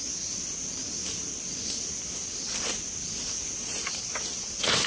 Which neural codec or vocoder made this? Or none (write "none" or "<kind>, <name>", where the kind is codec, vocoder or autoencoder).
none